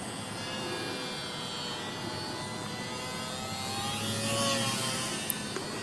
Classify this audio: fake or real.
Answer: real